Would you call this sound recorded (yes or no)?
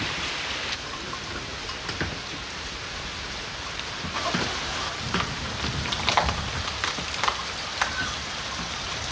no